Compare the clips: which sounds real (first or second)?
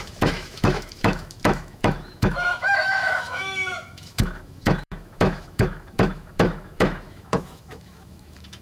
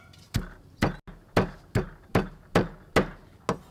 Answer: second